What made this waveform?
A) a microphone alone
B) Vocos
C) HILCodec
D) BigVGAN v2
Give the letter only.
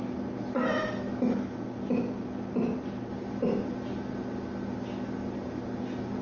A